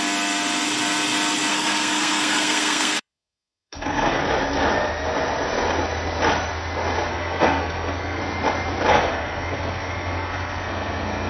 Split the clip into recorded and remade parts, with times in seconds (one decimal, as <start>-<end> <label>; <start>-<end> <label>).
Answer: 0.0-1.5 recorded; 1.5-4.2 remade; 4.2-7.1 recorded; 7.1-8.2 remade; 8.2-8.9 recorded; 8.9-11.3 remade